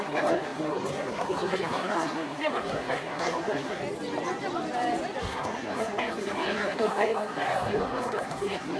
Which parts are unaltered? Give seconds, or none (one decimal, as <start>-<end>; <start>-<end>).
3.8-5.2